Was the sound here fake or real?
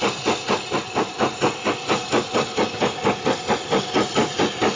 real